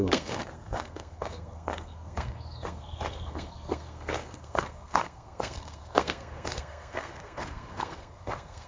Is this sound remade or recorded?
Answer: remade